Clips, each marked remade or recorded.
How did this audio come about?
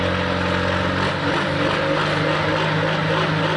recorded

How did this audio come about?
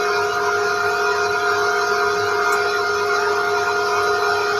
recorded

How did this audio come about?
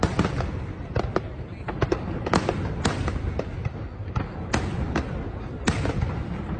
recorded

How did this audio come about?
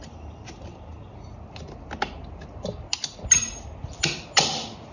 recorded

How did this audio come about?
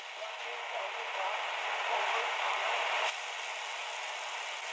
recorded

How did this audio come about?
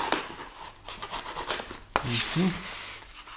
recorded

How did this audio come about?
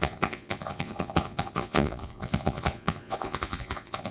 remade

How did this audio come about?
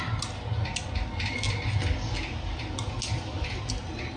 recorded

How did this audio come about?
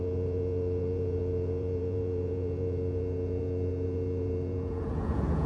remade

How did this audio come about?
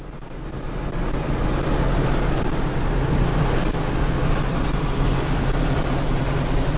recorded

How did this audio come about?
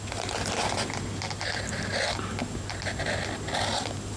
recorded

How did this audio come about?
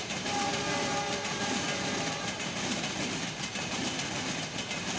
remade